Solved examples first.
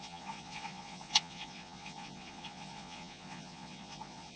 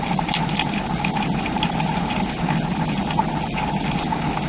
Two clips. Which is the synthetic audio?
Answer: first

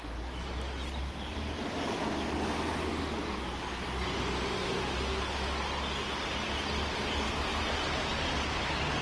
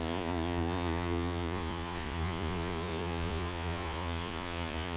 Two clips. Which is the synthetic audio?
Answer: second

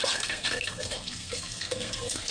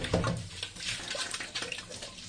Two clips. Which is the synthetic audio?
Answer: first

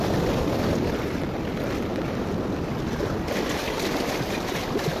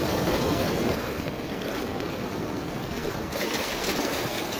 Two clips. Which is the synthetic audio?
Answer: second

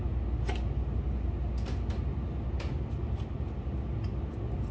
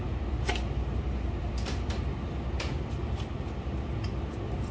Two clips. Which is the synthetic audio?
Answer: second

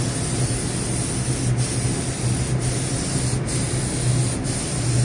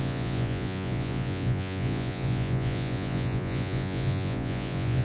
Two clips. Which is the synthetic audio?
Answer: second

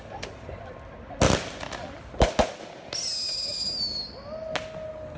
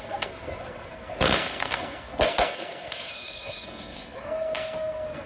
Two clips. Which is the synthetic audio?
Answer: second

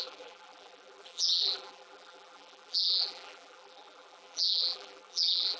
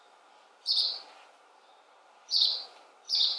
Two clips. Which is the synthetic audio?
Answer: first